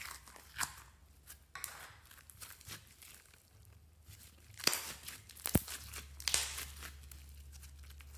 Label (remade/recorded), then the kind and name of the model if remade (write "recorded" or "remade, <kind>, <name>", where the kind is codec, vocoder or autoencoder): recorded